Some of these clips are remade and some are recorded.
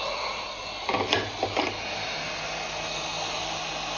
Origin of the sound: recorded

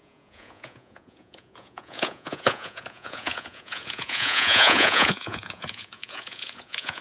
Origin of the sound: remade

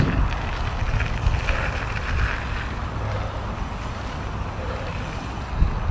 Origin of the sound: recorded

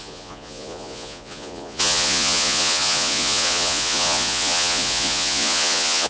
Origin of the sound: remade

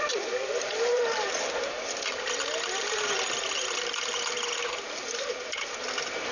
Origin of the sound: remade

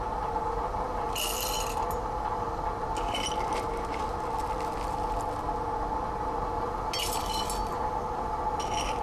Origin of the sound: recorded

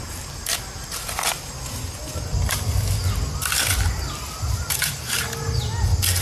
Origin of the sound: recorded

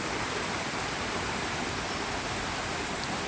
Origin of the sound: recorded